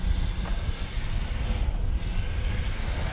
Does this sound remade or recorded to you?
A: recorded